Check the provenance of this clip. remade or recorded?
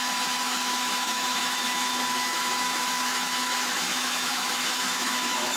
remade